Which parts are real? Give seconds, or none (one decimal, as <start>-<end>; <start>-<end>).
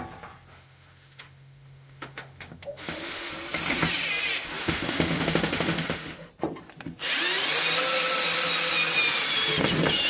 0.0-0.5; 3.3-4.6; 6.3-10.1